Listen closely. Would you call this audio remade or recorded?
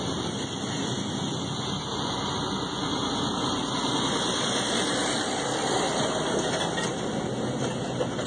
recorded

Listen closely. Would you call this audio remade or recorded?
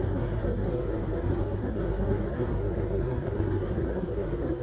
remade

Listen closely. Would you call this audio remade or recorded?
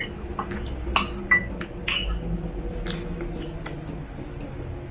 recorded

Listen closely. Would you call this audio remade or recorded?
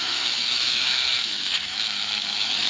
remade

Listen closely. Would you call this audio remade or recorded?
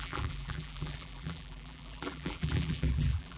remade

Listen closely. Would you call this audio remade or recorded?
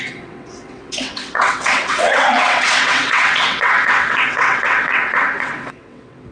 remade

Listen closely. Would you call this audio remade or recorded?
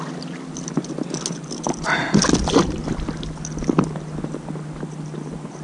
recorded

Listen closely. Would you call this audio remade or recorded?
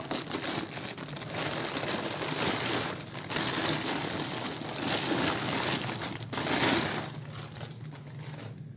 recorded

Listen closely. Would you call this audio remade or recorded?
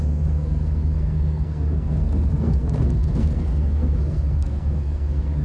remade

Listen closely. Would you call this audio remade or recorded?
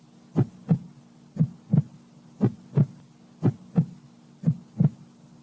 recorded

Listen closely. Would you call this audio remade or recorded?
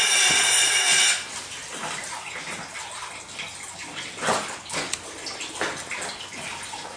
recorded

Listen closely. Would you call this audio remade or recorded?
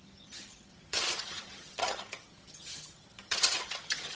remade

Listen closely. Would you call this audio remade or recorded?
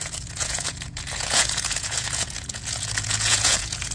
remade